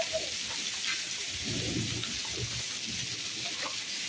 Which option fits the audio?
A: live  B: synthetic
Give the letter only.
A